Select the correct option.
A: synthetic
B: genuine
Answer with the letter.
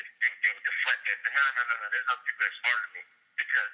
B